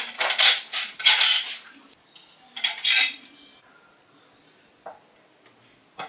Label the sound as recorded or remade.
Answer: recorded